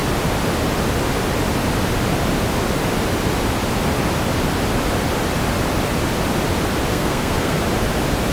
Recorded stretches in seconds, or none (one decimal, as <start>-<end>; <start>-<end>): 0.0-6.9; 7.6-8.3